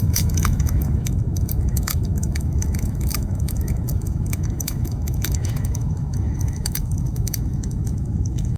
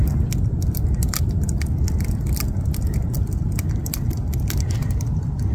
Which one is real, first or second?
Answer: second